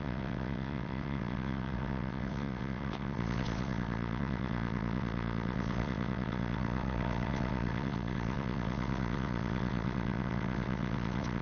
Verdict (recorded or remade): remade